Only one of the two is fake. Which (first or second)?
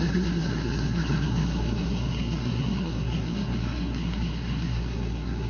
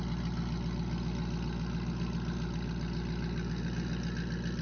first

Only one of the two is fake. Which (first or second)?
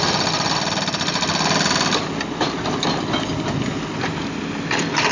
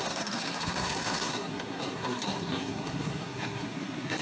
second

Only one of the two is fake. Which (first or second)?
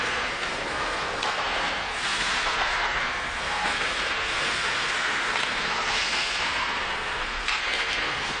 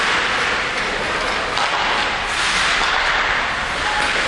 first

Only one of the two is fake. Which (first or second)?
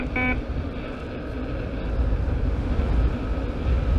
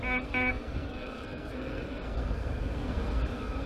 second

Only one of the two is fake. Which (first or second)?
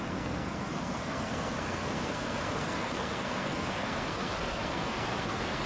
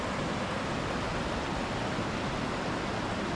first